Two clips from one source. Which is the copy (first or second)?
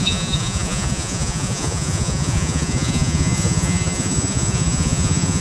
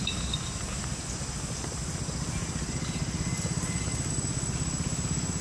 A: first